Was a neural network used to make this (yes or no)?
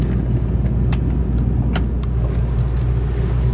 no